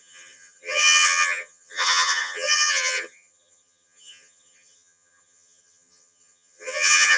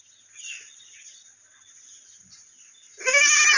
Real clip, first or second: second